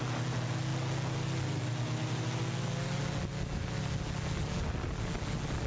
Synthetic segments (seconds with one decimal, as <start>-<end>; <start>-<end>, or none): none